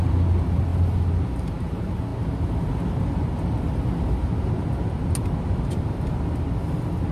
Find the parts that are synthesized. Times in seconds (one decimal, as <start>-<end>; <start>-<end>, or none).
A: none